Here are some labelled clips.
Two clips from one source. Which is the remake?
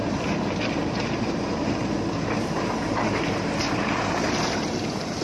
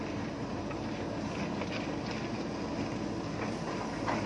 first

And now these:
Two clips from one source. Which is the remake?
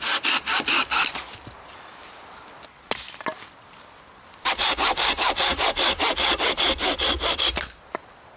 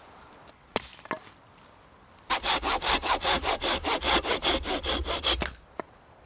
second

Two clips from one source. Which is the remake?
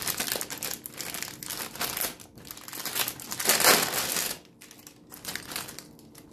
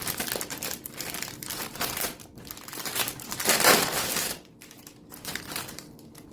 second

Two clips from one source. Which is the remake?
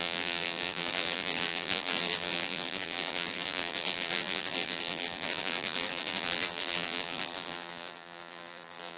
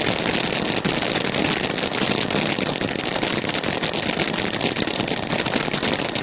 first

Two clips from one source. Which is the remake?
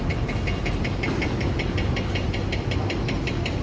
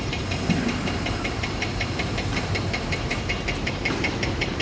second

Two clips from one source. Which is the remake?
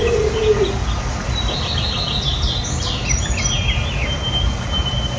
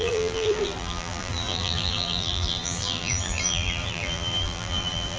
second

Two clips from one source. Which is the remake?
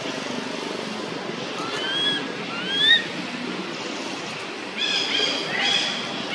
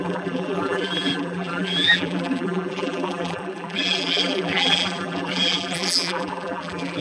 second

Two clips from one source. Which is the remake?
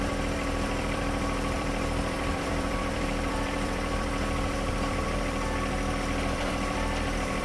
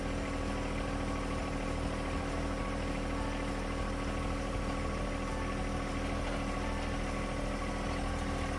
first